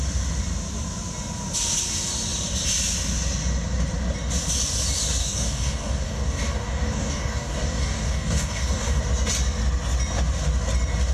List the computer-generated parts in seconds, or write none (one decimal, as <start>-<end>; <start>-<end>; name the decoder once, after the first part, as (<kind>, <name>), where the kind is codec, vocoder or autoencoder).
5.2-9.0 (codec, DAC)